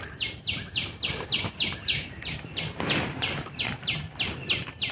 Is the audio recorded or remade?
recorded